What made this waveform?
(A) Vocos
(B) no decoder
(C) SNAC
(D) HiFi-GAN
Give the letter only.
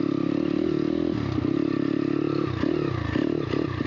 B